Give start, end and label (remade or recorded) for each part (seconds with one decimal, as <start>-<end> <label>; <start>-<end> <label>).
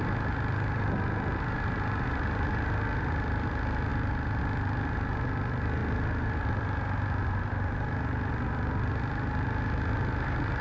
0.0-10.6 recorded